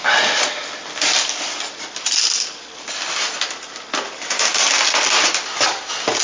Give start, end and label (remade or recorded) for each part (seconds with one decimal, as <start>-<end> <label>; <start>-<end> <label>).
0.0-6.2 recorded